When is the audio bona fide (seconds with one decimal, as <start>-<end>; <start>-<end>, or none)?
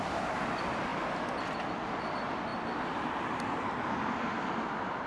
0.0-5.1